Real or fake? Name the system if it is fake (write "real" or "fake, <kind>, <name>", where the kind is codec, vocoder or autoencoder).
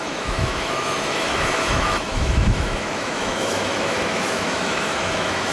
fake, autoencoder, DAC-VAE